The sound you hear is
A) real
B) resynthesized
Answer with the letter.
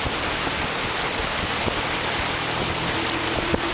A